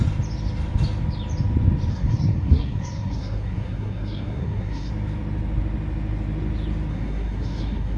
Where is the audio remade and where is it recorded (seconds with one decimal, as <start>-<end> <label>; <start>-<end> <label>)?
0.0-1.9 recorded; 1.9-4.9 remade; 4.9-6.9 recorded; 6.9-8.0 remade